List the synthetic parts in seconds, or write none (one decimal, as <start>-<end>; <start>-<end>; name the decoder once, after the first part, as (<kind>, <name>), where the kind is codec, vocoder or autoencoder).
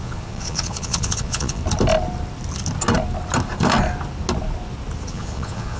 0.0-1.6 (vocoder, Vocos); 5.1-5.8